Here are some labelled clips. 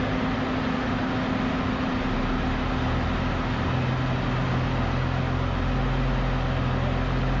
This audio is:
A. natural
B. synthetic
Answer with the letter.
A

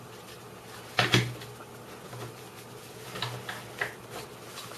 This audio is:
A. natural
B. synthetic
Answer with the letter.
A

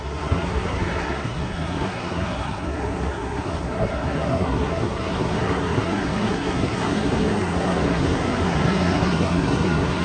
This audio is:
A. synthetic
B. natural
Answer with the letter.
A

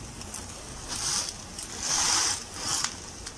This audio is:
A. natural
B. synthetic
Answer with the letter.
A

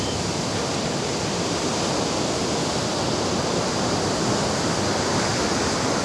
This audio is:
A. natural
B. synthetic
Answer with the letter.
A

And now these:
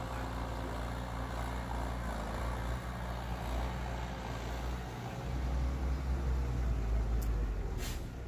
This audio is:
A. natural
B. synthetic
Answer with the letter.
A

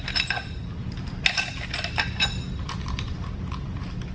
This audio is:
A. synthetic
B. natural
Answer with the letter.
B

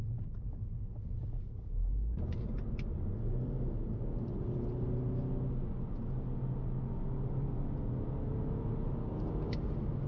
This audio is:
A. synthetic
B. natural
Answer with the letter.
B